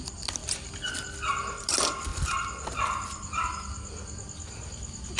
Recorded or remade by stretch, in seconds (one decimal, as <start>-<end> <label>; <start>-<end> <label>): 0.0-2.1 recorded; 2.1-3.5 remade; 3.5-5.2 recorded